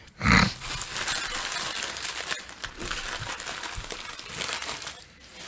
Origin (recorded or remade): recorded